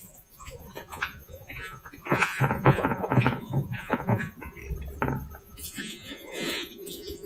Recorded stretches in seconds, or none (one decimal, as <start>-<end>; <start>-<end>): 4.6-5.4